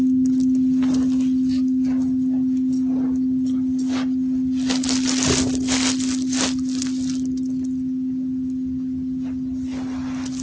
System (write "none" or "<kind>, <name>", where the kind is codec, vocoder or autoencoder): none